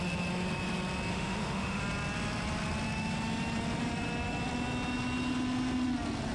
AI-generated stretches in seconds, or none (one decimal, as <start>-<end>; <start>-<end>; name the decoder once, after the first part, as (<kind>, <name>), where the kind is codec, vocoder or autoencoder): 1.1-1.8 (autoencoder, DAC-VAE)